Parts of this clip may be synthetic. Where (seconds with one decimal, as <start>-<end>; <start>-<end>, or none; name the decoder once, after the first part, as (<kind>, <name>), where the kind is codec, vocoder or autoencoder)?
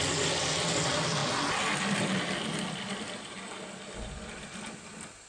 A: none